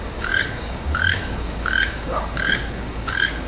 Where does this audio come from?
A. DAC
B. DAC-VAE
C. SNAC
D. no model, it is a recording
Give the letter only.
A